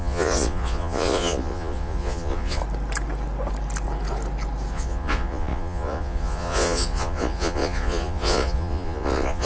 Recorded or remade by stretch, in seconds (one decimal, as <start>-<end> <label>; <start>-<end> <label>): 0.0-2.6 remade; 2.6-4.7 recorded; 4.7-9.5 remade